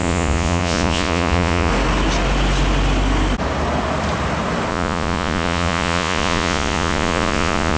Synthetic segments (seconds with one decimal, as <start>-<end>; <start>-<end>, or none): 0.0-1.7; 4.7-7.8